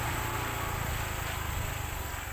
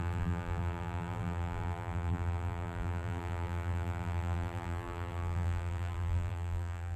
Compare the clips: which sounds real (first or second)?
first